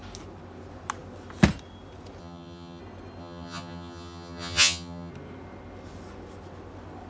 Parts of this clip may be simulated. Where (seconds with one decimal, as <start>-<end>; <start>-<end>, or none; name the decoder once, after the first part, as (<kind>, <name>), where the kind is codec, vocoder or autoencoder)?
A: 2.2-2.8 (vocoder, HiFi-GAN); 3.2-5.1